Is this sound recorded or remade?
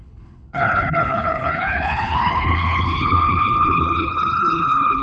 remade